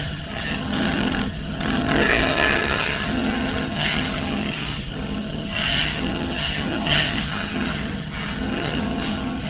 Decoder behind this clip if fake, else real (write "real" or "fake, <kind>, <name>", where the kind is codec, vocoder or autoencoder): fake, vocoder, HiFi-GAN